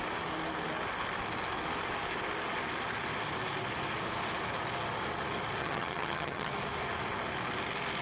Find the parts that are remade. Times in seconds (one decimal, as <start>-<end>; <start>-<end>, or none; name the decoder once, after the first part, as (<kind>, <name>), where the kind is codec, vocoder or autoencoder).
5.6-6.5 (vocoder, HiFi-GAN)